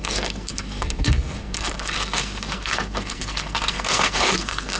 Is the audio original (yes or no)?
no